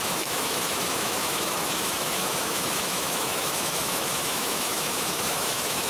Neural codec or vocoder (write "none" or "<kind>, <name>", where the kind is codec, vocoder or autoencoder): autoencoder, DAC-VAE